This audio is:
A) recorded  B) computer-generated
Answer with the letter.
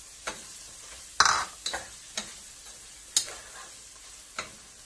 A